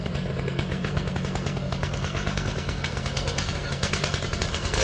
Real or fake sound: fake